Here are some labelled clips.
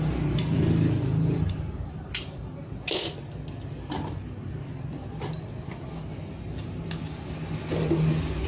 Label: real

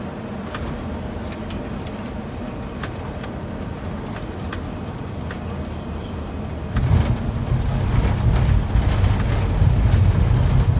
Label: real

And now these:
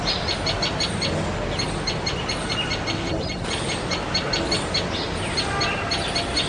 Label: real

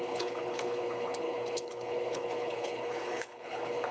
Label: fake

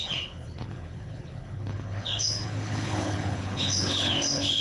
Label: fake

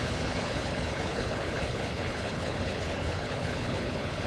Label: fake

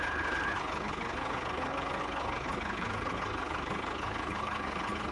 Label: fake